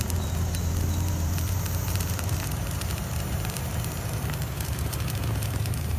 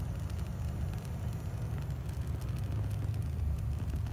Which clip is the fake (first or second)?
first